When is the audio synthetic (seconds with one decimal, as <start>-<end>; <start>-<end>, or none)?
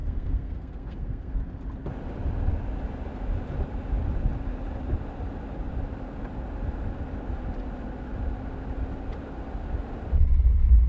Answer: 0.0-1.4